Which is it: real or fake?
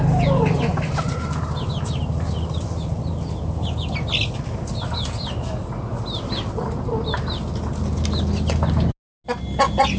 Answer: real